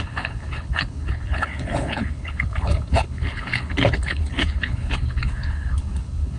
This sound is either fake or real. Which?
fake